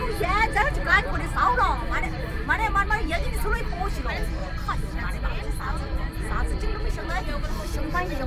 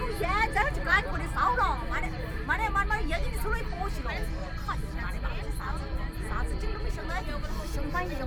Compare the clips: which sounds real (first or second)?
second